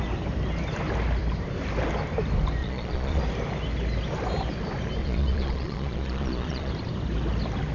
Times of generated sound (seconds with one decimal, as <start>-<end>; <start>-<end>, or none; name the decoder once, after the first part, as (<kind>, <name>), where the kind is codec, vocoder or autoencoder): 2.6-3.2 (vocoder, Vocos); 5.0-6.7